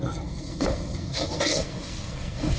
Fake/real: fake